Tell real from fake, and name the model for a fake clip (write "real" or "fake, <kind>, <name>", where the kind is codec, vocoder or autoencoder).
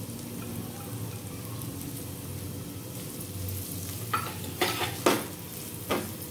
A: real